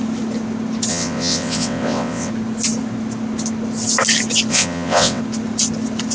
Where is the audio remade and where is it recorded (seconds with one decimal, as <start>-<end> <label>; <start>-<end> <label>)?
0.0-0.9 recorded; 0.9-2.3 remade; 2.3-4.5 recorded; 4.5-5.2 remade; 5.2-6.1 recorded